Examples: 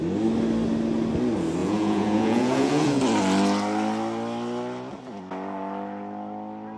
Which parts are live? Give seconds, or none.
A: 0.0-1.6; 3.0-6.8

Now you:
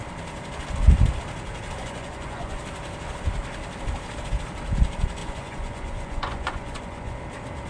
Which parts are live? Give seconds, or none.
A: 0.0-1.8; 2.6-5.2; 7.2-7.7